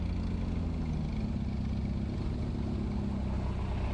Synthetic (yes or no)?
no